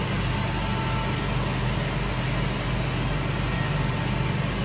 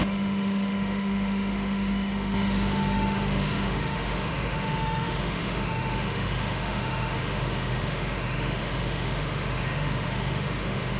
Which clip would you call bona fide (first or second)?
first